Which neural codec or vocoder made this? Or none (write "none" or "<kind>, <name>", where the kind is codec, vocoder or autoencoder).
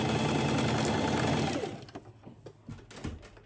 none